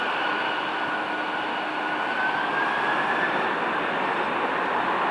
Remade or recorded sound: recorded